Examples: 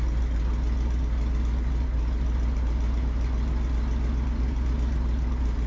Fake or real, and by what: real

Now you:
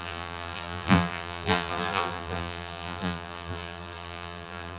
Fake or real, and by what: fake, vocoder, BigVGAN v2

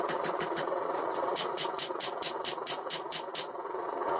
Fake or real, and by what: fake, vocoder, Vocos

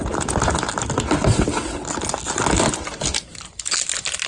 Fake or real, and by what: real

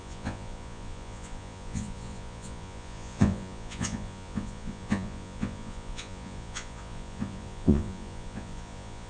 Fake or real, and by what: fake, vocoder, Vocos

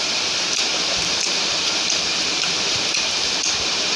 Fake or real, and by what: real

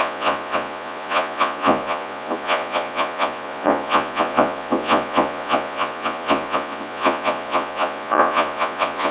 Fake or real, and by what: fake, vocoder, Vocos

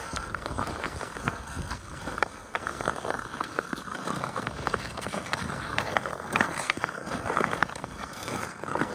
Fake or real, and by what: fake, codec, SNAC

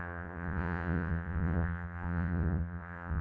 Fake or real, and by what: fake, vocoder, Vocos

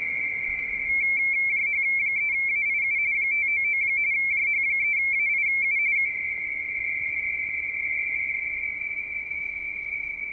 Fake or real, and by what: real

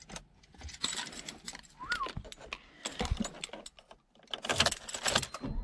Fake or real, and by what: real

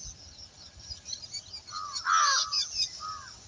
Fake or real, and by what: real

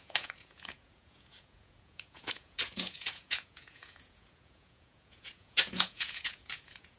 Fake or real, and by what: fake, vocoder, Vocos